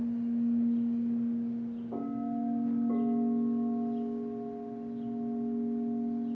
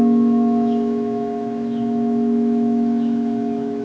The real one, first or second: first